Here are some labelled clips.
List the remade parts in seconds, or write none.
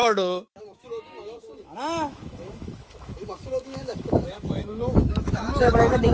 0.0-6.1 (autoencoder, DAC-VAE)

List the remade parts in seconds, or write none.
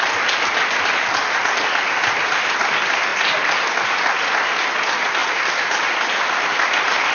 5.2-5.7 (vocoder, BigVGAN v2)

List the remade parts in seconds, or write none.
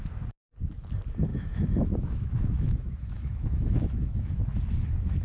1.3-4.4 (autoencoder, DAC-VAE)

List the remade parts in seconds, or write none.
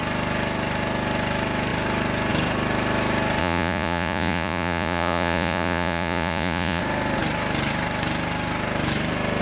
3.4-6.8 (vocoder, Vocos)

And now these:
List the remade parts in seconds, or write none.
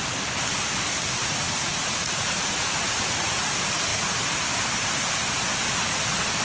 1.2-3.5 (vocoder, Vocos)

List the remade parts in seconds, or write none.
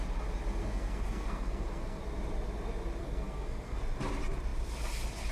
0.6-2.0 (codec, SNAC); 3.0-3.8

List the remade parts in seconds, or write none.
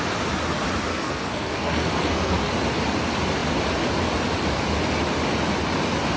0.9-2.5 (codec, SNAC)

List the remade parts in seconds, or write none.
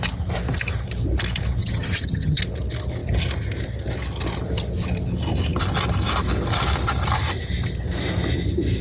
1.6-2.4 (vocoder, HiFi-GAN)